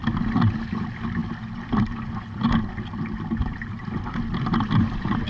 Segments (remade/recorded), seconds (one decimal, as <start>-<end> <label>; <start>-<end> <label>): 0.0-5.3 recorded